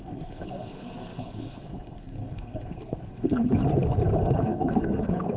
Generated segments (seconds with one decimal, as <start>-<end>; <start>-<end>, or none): 0.0-3.6; 4.2-5.4